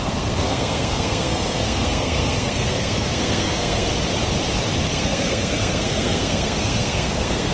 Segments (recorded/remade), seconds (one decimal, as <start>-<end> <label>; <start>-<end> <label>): 0.0-3.9 remade; 3.9-4.9 recorded; 4.9-7.5 remade